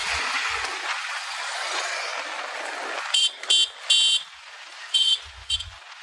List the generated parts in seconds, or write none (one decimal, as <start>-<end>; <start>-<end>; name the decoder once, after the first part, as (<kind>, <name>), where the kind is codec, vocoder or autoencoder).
0.0-2.1 (vocoder, Vocos); 4.3-6.0